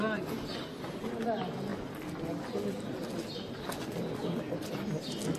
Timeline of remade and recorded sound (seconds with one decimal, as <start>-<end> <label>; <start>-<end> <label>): 0.0-5.4 recorded